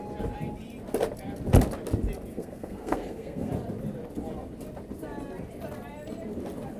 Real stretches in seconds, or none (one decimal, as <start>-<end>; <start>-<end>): 0.0-2.3; 3.5-6.8